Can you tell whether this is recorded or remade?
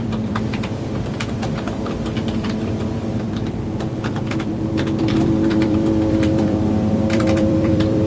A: remade